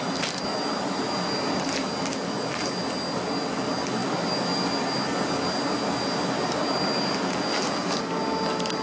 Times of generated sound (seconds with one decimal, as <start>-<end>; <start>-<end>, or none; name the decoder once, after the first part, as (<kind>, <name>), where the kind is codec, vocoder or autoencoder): none